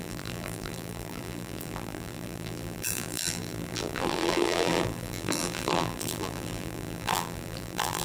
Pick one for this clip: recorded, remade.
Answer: remade